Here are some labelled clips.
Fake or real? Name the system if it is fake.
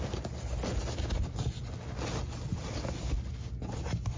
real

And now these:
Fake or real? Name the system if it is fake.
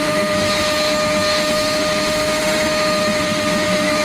fake, autoencoder, DAC-VAE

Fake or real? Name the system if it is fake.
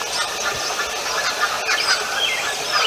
real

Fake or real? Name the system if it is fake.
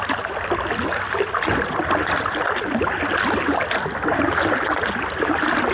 real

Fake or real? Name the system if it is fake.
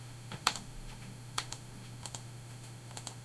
fake, autoencoder, DAC-VAE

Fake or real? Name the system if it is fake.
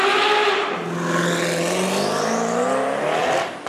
real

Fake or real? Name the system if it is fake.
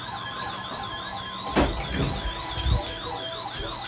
real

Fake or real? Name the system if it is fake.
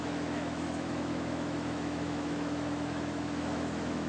fake, autoencoder, DAC-VAE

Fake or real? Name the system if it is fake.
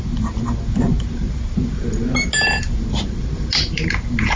real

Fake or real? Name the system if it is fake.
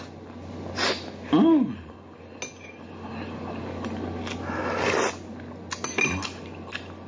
real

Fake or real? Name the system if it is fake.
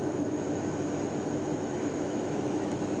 fake, autoencoder, DAC-VAE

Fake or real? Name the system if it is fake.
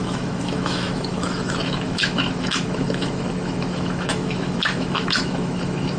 fake, autoencoder, DAC-VAE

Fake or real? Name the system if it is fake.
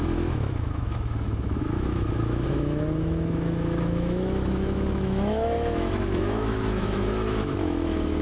fake, autoencoder, DAC-VAE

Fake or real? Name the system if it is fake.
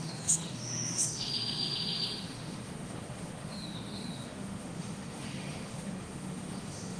fake, autoencoder, DAC-VAE